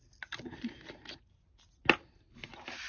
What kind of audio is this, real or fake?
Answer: real